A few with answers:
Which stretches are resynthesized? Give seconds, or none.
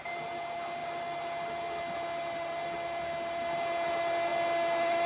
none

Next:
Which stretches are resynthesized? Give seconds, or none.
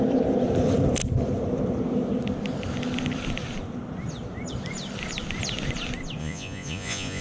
6.2-7.2 (vocoder, Vocos)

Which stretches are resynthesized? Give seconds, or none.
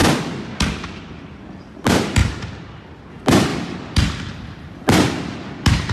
none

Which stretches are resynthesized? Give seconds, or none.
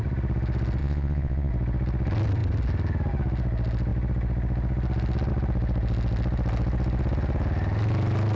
0.8-1.5 (vocoder, Vocos)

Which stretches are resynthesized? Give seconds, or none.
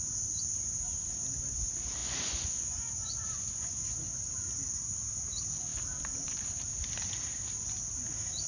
2.0-4.2 (vocoder, Vocos)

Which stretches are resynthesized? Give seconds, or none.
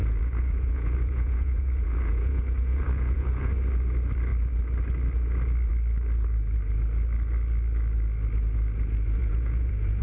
0.0-3.5 (vocoder, Vocos); 9.2-10.0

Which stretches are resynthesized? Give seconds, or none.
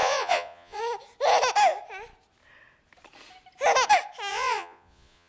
0.0-0.8 (vocoder, Vocos); 4.3-5.3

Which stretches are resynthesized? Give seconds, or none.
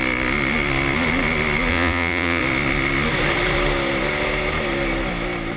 1.7-2.4 (vocoder, Vocos)